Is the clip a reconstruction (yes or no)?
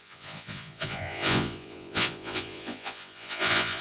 yes